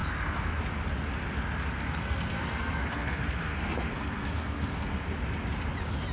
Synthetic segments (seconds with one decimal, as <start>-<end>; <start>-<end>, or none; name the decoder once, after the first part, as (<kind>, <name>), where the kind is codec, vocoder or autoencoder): 0.0-0.5 (codec, SNAC); 1.7-5.1

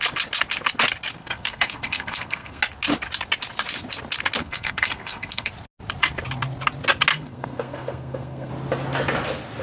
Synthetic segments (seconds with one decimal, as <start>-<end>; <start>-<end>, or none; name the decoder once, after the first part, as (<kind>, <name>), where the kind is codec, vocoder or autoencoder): 1.2-2.6 (codec, SNAC); 4.4-5.5; 7.1-8.5